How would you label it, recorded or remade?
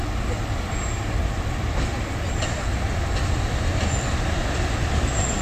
recorded